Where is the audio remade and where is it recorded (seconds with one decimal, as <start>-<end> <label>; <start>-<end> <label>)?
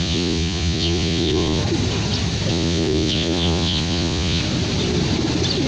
0.0-1.6 remade; 1.6-2.5 recorded; 2.5-4.4 remade; 4.4-5.7 recorded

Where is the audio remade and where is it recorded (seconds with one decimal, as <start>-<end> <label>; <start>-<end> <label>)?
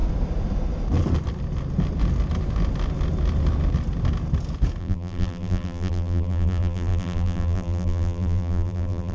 0.0-4.8 recorded; 4.8-9.1 remade